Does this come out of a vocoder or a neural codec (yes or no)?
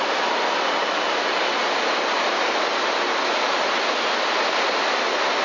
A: no